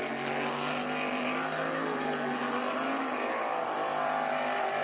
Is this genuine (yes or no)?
yes